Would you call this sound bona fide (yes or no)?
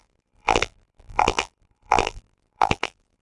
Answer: no